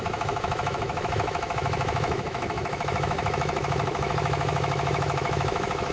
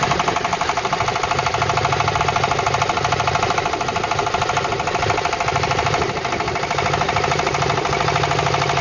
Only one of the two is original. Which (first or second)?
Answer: second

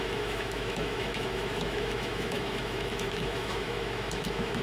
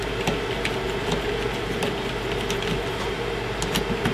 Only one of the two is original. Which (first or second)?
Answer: second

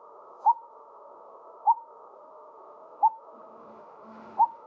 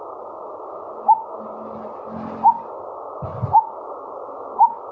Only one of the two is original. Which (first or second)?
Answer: second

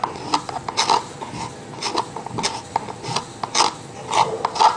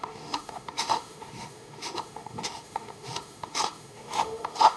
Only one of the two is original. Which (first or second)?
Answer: first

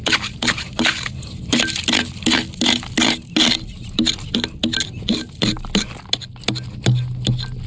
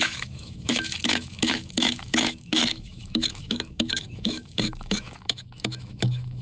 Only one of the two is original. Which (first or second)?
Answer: first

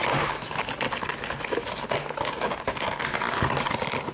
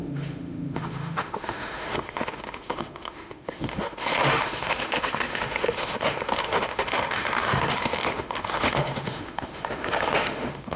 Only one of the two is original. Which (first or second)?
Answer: first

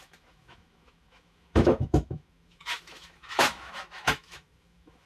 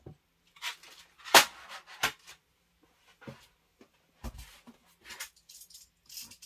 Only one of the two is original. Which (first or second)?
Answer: second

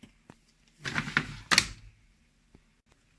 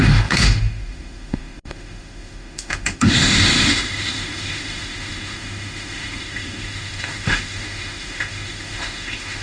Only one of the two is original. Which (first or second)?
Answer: first